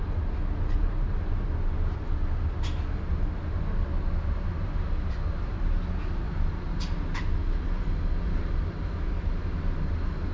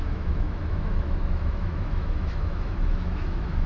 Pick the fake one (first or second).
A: second